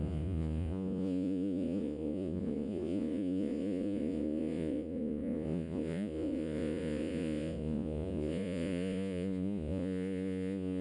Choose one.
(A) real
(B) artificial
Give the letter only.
B